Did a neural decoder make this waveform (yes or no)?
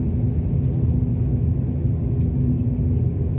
no